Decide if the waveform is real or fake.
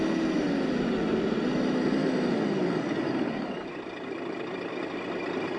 real